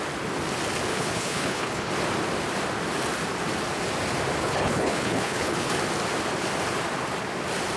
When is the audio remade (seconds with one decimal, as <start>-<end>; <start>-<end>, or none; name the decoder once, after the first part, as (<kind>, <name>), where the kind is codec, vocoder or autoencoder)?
0.9-1.9 (codec, HILCodec); 4.4-5.7